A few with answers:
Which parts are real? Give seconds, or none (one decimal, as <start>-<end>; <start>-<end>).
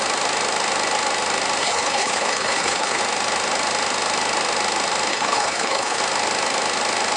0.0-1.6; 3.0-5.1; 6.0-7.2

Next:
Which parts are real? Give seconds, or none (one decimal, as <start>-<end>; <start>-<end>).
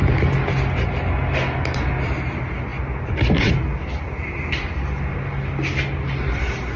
0.0-6.8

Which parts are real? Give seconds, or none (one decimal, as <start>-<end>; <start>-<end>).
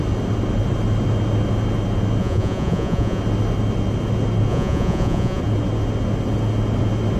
0.0-2.2; 3.2-4.5; 5.4-7.2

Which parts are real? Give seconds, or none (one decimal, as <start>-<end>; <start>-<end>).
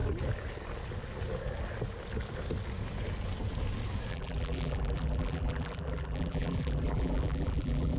0.0-4.1